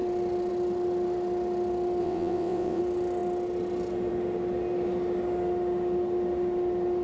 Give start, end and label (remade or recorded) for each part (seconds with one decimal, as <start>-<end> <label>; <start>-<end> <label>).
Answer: 0.0-2.0 recorded; 2.0-2.8 remade; 2.8-7.0 recorded